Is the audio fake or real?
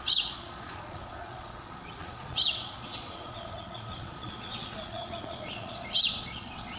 fake